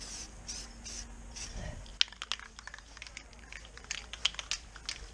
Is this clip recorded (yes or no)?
yes